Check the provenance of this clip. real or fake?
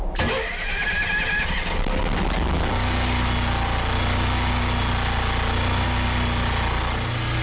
real